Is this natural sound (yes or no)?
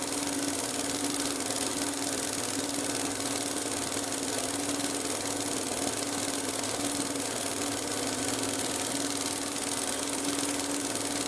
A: yes